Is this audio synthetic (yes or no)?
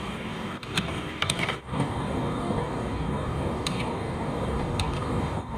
yes